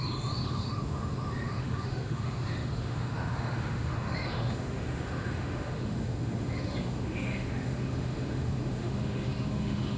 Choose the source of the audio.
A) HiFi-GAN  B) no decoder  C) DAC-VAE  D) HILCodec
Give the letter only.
C